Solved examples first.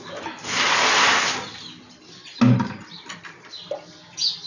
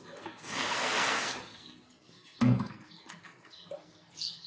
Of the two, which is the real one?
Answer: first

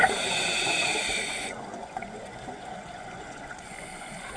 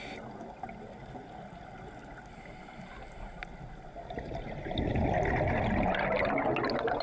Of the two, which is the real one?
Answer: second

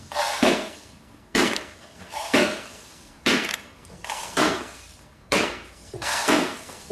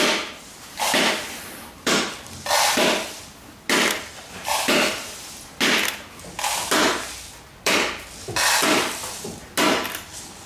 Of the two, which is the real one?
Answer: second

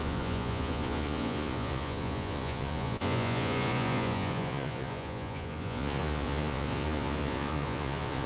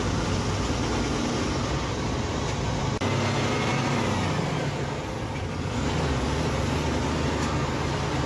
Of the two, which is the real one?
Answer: second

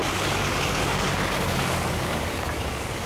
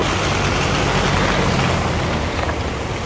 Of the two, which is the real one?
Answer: second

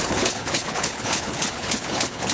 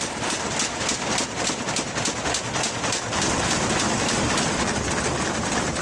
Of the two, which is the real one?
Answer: second